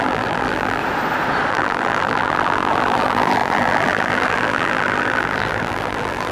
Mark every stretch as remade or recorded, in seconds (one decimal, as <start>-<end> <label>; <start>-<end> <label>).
0.0-0.8 remade; 0.8-1.5 recorded; 1.5-6.3 remade